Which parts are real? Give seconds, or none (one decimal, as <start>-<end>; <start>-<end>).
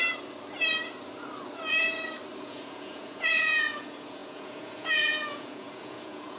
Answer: 0.0-2.4